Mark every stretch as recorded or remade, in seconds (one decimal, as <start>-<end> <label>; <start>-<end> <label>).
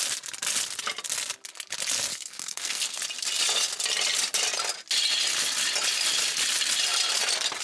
0.0-2.1 recorded; 2.1-3.0 remade; 3.0-7.6 recorded